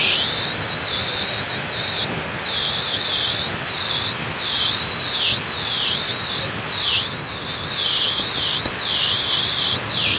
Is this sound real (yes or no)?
yes